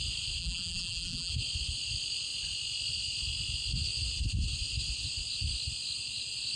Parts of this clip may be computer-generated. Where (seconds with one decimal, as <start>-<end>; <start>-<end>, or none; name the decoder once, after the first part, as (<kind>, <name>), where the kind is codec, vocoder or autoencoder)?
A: 0.4-1.3 (vocoder, BigVGAN v2)